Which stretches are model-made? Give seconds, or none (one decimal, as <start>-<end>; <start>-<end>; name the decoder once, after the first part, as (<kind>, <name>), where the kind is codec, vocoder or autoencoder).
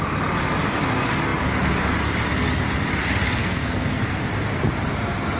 3.4-4.2 (codec, SNAC)